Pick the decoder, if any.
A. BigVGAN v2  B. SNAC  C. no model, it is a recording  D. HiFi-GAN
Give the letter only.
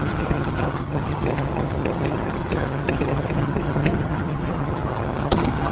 D